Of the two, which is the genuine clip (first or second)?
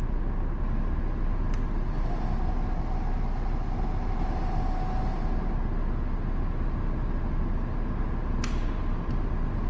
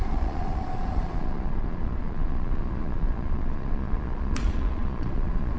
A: first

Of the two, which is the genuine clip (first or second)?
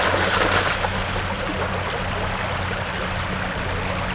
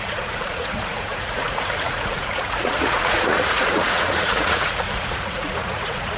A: first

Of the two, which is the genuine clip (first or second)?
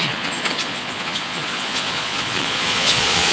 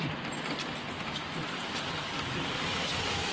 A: second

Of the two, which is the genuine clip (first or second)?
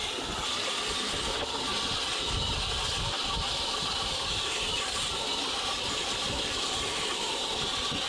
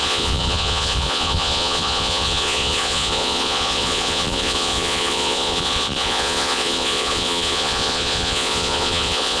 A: first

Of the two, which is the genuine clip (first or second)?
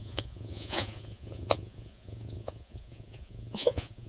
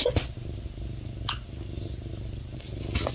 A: second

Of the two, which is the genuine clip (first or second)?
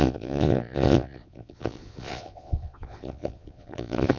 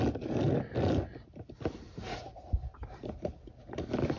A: second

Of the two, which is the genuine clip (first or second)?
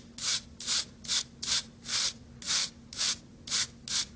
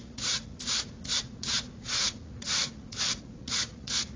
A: first